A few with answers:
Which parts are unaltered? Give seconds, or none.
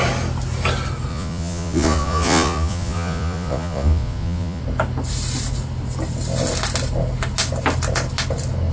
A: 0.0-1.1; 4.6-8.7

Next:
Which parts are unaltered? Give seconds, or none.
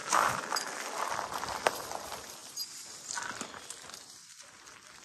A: 0.0-5.0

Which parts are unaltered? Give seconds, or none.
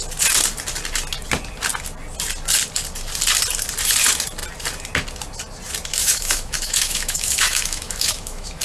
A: 0.0-5.9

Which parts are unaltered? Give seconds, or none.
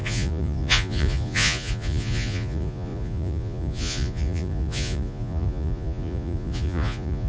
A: none